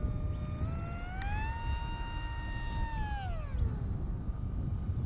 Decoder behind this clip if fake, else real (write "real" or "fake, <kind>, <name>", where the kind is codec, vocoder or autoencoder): real